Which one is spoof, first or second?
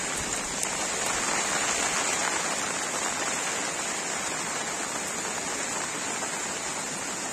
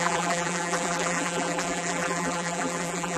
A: second